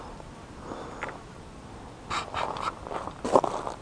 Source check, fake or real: real